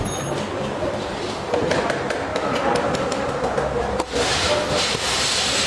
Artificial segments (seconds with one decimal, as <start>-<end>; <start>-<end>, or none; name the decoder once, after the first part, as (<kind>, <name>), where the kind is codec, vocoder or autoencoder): 0.0-2.3 (vocoder, BigVGAN v2); 3.8-5.7